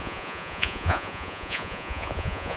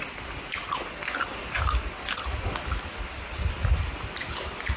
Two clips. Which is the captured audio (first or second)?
second